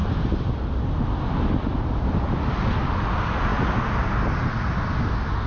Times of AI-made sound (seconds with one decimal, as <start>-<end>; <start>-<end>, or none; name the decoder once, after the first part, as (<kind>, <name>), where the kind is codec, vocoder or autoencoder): 0.0-0.5 (vocoder, BigVGAN v2)